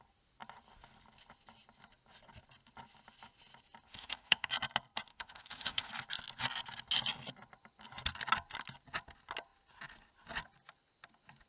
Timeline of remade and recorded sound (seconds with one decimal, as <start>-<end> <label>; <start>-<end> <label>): 0.0-3.9 recorded; 3.9-4.5 remade; 4.5-5.1 recorded; 5.1-5.9 remade; 5.9-11.5 recorded